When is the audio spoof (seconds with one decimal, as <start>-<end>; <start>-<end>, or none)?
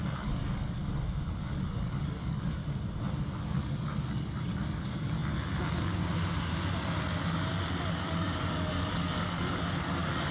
0.0-0.8; 1.4-2.6; 3.2-5.2; 7.9-10.3